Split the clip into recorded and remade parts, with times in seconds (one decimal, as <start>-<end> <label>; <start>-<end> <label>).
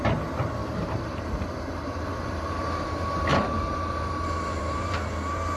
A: 0.0-0.6 recorded; 0.6-2.9 remade; 2.9-3.3 recorded; 3.3-4.9 remade; 4.9-5.6 recorded